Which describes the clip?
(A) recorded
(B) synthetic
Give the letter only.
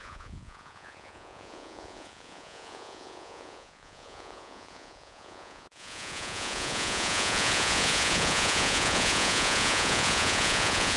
B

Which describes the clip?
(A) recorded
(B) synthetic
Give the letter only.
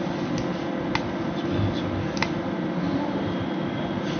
A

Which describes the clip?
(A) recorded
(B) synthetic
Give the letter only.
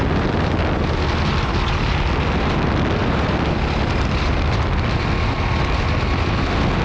A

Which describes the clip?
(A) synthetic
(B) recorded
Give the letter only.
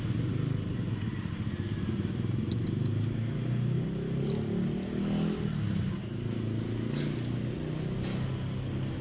B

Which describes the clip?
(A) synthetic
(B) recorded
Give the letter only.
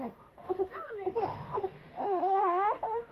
A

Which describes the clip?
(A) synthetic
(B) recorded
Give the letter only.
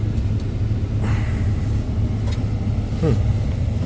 B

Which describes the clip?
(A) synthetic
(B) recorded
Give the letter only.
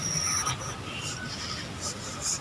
B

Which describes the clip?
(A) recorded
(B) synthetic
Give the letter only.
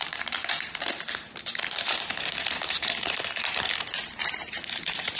B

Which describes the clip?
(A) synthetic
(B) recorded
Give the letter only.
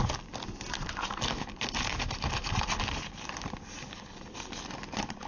B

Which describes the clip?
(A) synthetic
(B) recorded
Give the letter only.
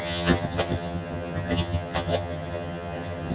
A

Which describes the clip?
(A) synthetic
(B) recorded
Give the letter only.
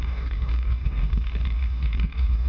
A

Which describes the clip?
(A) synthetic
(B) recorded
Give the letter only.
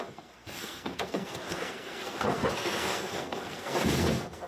A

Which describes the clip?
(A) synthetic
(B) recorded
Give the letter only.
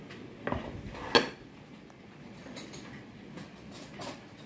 B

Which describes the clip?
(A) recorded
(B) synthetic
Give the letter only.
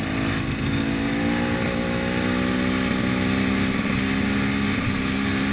A